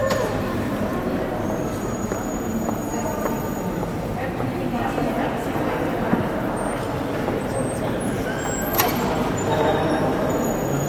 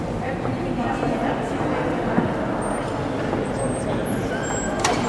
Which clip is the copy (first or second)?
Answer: first